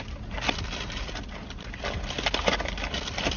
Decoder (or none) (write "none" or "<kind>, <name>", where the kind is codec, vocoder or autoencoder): none